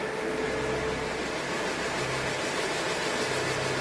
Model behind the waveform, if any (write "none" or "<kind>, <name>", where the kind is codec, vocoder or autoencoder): none